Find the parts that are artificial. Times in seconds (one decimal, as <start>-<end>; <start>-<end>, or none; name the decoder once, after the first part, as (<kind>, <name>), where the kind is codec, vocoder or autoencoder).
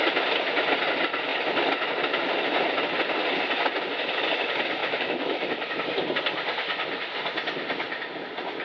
4.8-5.7 (autoencoder, DAC-VAE)